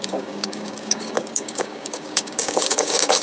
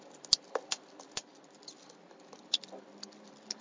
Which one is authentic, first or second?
second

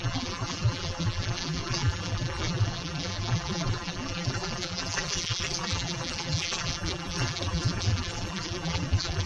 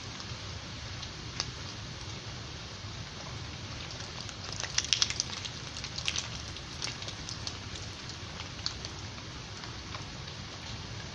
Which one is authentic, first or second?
second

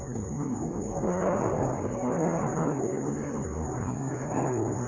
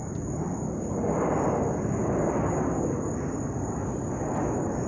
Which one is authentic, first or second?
second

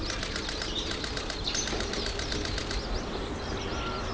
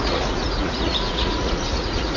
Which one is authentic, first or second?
first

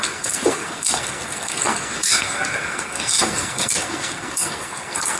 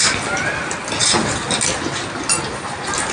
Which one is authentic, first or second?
second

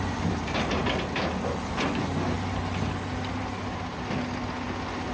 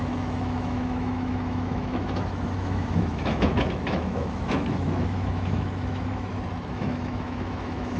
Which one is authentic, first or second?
first